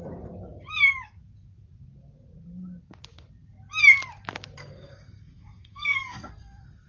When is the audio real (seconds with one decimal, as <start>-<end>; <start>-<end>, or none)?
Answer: 0.0-4.6